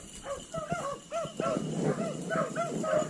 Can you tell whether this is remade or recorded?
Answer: recorded